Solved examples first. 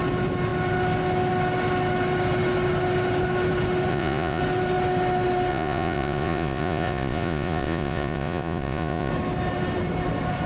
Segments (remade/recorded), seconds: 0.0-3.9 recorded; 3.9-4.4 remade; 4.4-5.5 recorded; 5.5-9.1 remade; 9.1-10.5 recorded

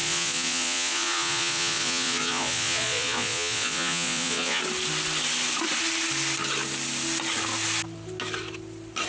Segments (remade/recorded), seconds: 0.0-4.6 remade; 4.6-9.1 recorded

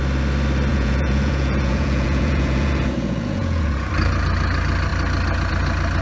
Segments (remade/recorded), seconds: 0.0-0.7 recorded; 0.7-3.9 remade; 3.9-6.0 recorded

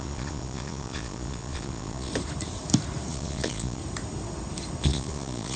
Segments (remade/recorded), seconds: 0.0-2.1 remade; 2.1-3.1 recorded; 3.1-3.8 remade; 3.8-4.8 recorded; 4.8-5.6 remade